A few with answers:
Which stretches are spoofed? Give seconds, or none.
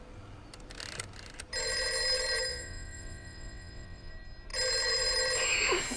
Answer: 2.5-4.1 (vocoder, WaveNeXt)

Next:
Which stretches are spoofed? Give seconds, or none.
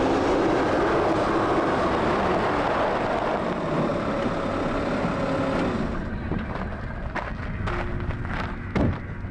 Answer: 3.9-4.5 (vocoder, BigVGAN v2)